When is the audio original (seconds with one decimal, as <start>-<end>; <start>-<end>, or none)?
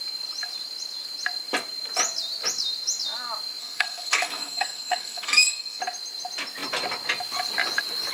0.0-3.6; 5.8-8.1